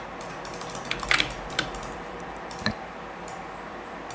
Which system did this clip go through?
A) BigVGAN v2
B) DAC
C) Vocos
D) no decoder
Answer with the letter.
A